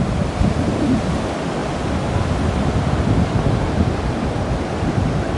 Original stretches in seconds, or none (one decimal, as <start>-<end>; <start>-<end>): 0.0-5.4